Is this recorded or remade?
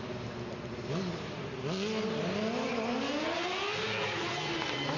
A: recorded